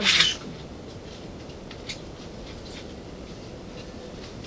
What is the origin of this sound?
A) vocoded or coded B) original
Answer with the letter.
B